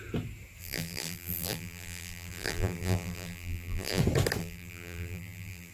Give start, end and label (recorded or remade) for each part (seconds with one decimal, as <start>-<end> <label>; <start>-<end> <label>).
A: 0.0-0.6 recorded; 0.6-4.0 remade; 4.0-4.4 recorded; 4.4-5.7 remade